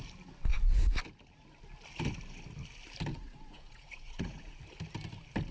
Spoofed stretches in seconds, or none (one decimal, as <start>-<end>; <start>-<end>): 3.1-4.6